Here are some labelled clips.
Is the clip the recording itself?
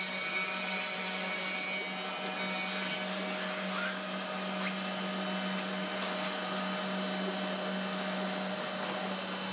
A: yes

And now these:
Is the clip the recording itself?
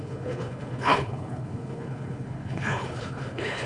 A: no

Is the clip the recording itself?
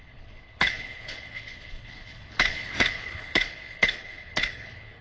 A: no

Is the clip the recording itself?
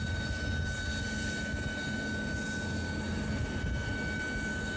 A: yes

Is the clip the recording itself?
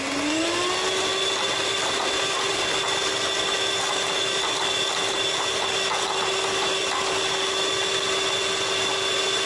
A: yes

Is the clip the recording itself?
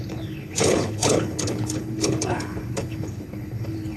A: no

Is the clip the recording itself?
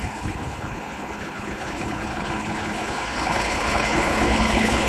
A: no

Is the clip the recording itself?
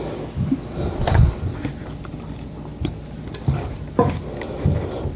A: yes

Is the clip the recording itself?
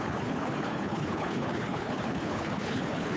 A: no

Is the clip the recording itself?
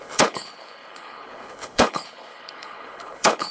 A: no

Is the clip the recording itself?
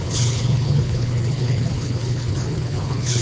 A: no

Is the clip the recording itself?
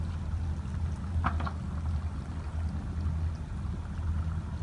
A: yes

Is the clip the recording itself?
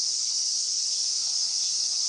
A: no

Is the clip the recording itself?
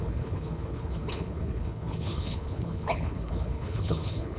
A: no